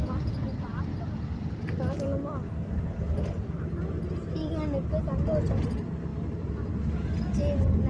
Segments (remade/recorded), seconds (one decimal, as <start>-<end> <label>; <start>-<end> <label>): 0.0-7.9 recorded